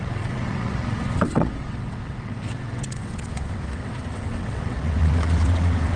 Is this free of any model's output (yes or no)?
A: no